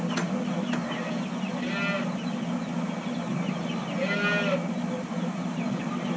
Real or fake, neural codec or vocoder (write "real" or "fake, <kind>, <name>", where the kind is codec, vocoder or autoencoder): real